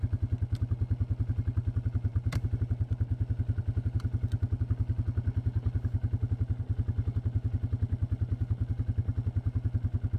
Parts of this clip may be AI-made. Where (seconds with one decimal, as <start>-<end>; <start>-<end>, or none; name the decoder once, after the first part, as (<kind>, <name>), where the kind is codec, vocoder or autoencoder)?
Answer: none